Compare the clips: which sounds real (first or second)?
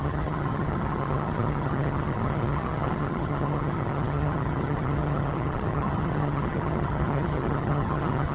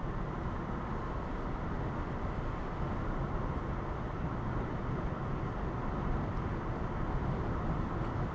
second